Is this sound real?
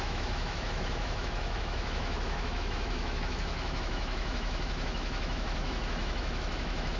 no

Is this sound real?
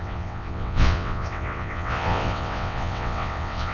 no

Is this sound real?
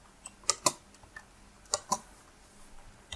yes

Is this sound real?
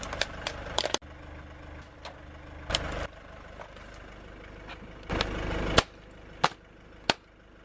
yes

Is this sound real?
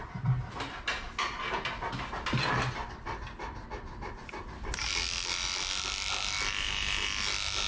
yes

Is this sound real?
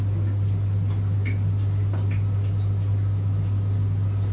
yes